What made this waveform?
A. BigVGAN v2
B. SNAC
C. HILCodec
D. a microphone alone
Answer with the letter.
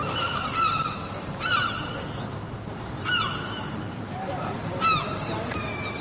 A